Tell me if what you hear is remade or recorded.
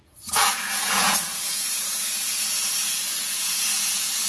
remade